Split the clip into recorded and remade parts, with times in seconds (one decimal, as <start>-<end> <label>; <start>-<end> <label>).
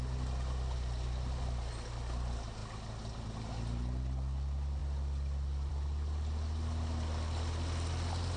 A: 0.0-8.4 recorded